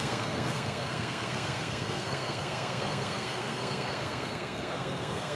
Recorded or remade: remade